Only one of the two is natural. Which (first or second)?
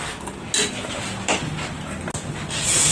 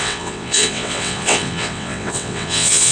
first